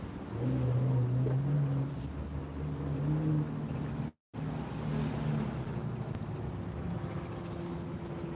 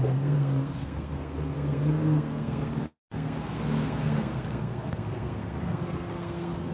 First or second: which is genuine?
first